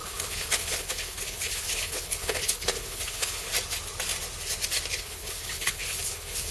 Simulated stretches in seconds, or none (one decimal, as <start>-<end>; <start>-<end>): 0.0-3.5; 4.9-6.5